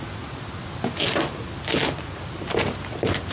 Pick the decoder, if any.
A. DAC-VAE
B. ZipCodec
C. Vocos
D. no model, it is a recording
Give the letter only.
D